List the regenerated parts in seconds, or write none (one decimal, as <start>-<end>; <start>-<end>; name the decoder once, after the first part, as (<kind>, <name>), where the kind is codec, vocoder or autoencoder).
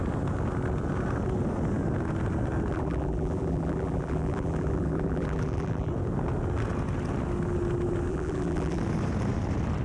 2.7-5.9 (vocoder, BigVGAN v2); 8.1-8.8